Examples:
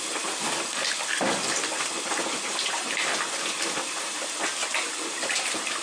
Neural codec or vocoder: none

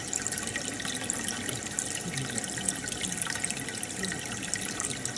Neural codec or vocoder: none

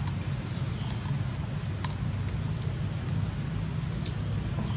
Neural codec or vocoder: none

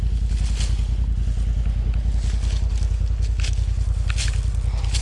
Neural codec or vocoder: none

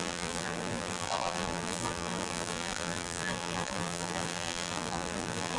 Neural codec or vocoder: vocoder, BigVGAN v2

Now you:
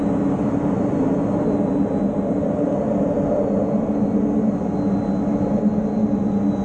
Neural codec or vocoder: none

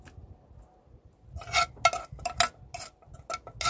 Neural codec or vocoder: none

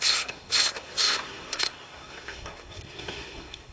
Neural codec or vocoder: codec, SNAC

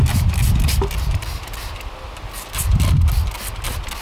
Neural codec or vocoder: none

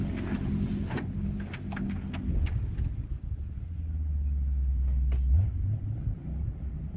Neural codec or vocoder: none